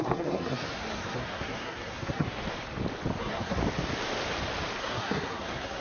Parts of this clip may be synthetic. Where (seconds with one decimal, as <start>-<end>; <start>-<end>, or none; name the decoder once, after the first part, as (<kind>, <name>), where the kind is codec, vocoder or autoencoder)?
0.0-2.4 (codec, SNAC); 3.2-3.6; 4.8-5.8